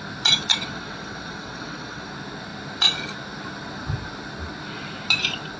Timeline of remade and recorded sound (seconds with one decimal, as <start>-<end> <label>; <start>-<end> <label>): 0.0-0.5 recorded; 0.5-2.1 remade; 2.1-5.6 recorded

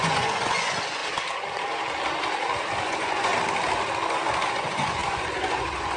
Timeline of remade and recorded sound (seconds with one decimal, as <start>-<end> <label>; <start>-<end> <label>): 0.0-1.0 remade; 1.0-2.8 recorded; 2.8-3.3 remade; 3.3-4.5 recorded; 4.5-6.0 remade

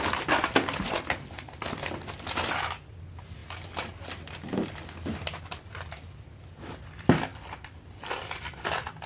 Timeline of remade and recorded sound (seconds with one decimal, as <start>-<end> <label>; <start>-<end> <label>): 0.0-3.4 recorded; 3.4-6.8 remade; 6.8-7.3 recorded; 7.3-9.1 remade